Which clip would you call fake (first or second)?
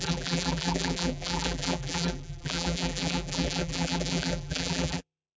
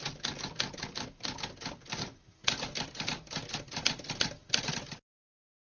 first